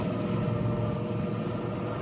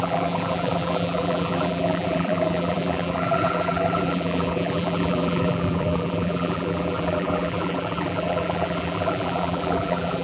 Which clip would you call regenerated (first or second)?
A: second